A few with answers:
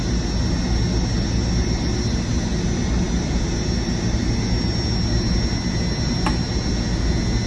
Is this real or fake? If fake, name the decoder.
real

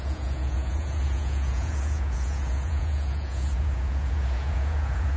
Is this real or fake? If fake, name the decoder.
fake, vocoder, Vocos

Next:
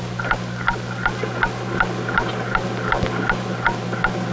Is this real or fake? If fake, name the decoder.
real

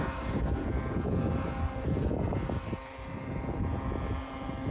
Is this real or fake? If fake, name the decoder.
real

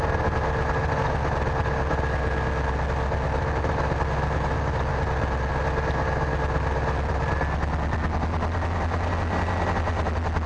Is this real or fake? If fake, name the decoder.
real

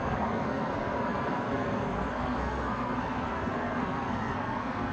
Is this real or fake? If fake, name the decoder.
fake, codec, SNAC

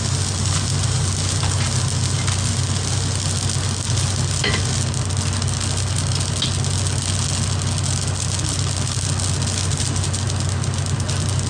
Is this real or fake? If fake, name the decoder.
real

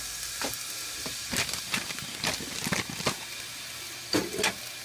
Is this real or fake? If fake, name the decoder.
real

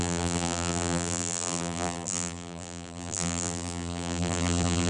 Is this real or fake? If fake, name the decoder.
fake, vocoder, BigVGAN v2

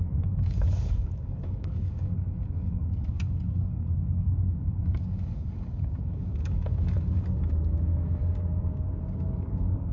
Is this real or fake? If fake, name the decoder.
fake, codec, DAC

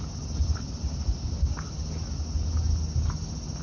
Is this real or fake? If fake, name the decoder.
real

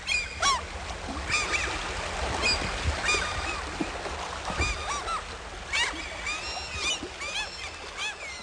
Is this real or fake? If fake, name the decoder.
real